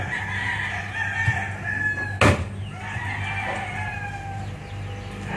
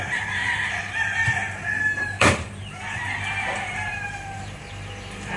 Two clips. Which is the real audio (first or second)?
first